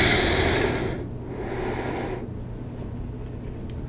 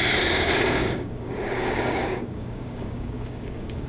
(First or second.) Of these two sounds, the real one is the first